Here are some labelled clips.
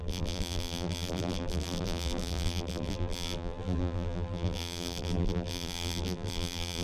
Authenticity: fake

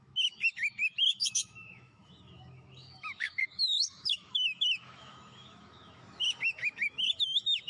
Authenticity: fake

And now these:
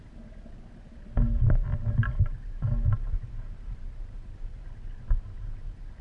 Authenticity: real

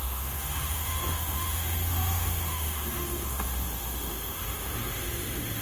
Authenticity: fake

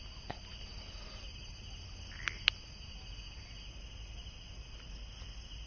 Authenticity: real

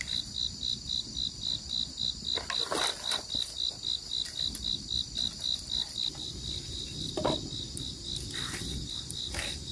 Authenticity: real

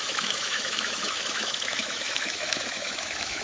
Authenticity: fake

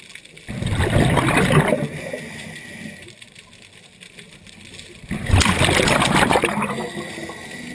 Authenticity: real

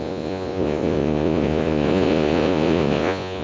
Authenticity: fake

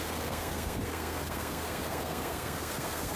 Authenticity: fake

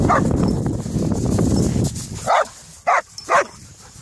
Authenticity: real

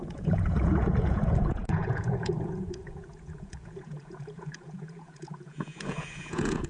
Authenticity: fake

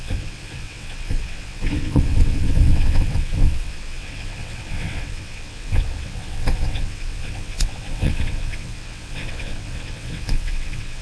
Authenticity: fake